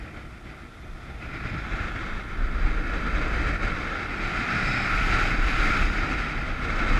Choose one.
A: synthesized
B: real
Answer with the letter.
B